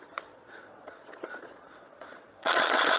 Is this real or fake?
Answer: fake